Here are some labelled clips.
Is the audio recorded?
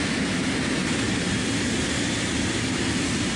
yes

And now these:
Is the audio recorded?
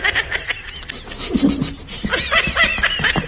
yes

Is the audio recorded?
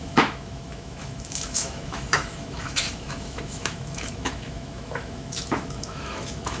no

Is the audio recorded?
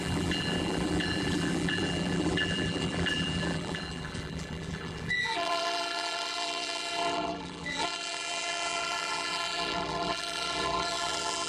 no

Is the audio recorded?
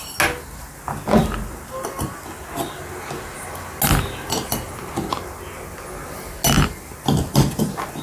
yes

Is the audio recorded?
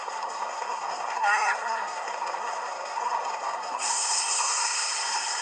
no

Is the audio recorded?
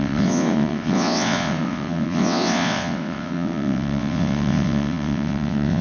no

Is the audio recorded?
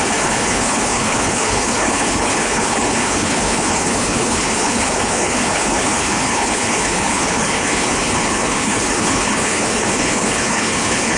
no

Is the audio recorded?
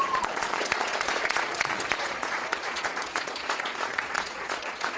no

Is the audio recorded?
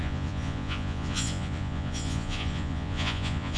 no